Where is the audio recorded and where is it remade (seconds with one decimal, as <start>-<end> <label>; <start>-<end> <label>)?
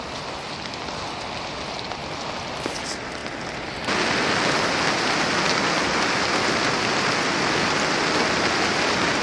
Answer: 0.0-9.2 recorded